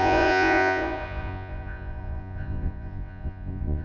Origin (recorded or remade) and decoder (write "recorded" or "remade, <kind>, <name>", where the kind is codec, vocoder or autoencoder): remade, vocoder, Vocos